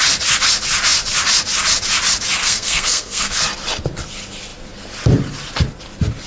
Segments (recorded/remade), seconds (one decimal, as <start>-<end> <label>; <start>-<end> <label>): 0.0-2.4 recorded; 2.4-3.4 remade; 3.4-6.3 recorded